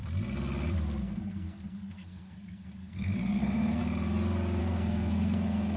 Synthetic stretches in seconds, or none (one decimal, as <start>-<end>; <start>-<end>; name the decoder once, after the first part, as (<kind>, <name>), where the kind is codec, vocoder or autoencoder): 1.0-3.8 (codec, SNAC); 4.6-5.8